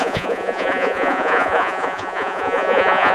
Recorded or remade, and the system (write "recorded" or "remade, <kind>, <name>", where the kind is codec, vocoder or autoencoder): remade, vocoder, Vocos